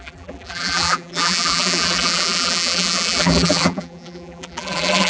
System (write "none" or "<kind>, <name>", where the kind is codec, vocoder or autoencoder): vocoder, BigVGAN v2